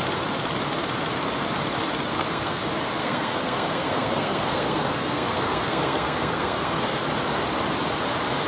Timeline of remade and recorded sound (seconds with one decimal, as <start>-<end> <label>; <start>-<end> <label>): 0.0-2.1 recorded; 2.1-2.6 remade; 2.6-3.0 recorded; 3.0-7.0 remade; 7.0-8.5 recorded